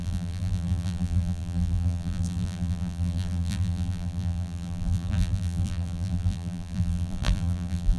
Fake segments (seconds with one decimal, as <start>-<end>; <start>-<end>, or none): 0.0-8.0